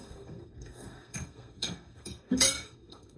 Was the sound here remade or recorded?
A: remade